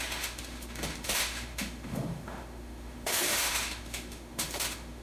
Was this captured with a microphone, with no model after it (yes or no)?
no